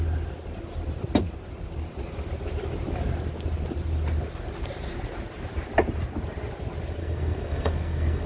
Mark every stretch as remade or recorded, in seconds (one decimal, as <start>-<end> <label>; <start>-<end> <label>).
0.0-7.0 recorded; 7.0-8.3 remade